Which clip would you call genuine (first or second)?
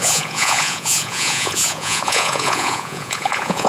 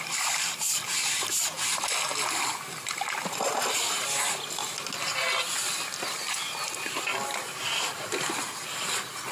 second